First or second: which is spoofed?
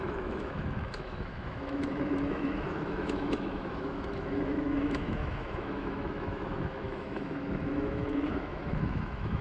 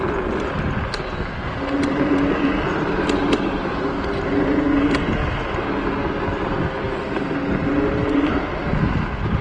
first